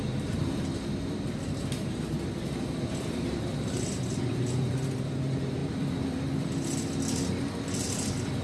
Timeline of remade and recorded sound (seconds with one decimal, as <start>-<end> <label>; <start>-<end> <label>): 0.0-8.4 remade